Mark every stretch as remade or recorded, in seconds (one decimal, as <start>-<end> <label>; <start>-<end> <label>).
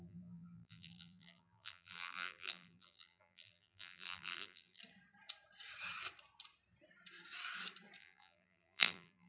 0.0-4.8 remade; 4.8-8.0 recorded; 8.0-9.3 remade